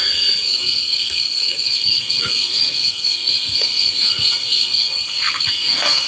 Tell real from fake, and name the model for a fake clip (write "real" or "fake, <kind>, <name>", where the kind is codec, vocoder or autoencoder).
fake, codec, SNAC